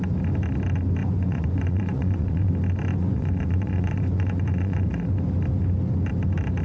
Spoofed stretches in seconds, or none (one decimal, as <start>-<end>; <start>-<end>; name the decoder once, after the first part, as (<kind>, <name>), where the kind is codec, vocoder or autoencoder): 1.0-2.5 (vocoder, Vocos); 2.9-5.1